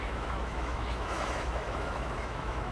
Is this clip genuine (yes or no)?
no